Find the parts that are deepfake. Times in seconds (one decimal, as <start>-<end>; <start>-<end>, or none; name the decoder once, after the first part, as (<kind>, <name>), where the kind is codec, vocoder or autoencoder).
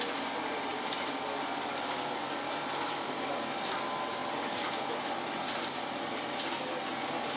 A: 0.7-3.4 (vocoder, BigVGAN v2); 4.2-7.4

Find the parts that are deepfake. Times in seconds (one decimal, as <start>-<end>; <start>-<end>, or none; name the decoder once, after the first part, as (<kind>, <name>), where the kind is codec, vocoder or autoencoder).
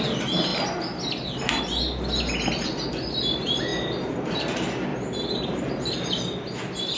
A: 3.7-4.4 (vocoder, BigVGAN v2); 4.9-5.6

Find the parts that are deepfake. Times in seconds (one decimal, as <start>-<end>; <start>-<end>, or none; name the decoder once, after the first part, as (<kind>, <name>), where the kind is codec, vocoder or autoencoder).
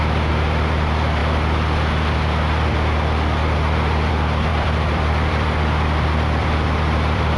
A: 4.5-7.4 (vocoder, BigVGAN v2)